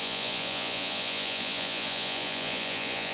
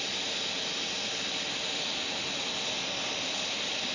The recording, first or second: second